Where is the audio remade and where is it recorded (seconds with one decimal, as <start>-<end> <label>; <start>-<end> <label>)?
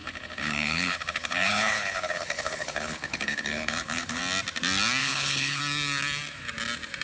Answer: 0.0-4.2 remade; 4.2-5.0 recorded; 5.0-5.6 remade; 5.6-7.0 recorded